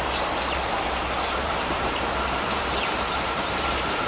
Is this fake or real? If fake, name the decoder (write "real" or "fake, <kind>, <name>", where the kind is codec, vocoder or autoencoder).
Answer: fake, vocoder, BigVGAN v2